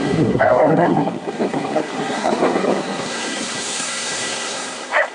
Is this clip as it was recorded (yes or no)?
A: no